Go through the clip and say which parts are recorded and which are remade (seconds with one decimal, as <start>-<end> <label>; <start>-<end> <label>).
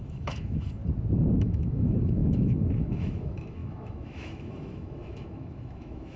0.0-0.8 remade; 0.8-1.4 recorded; 1.4-6.2 remade